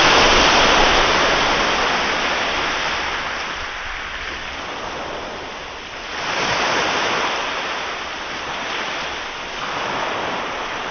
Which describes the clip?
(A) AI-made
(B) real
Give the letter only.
B